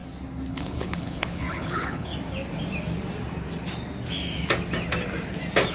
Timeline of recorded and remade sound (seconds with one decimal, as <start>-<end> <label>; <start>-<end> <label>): 0.0-0.5 recorded; 0.5-2.1 remade; 2.1-5.7 recorded